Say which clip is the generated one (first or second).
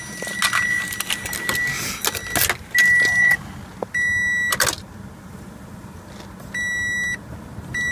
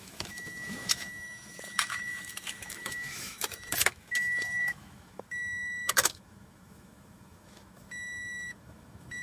second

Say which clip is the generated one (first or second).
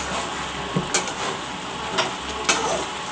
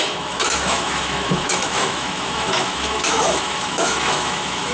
second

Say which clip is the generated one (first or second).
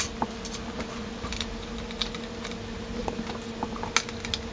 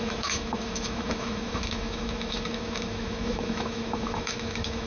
second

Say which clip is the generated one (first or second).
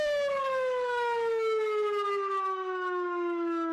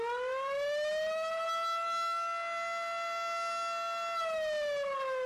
first